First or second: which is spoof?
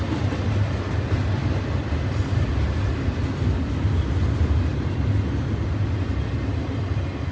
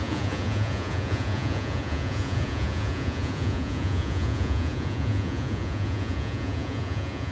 second